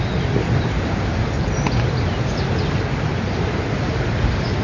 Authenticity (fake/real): real